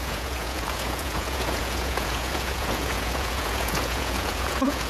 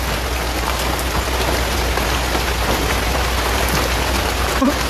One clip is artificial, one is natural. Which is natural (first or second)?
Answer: second